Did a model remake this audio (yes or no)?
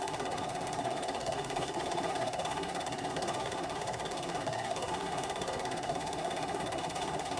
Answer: yes